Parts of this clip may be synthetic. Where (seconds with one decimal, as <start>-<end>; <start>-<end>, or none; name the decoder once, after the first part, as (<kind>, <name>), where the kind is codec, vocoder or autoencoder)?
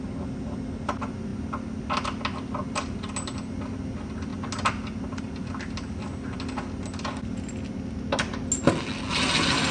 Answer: none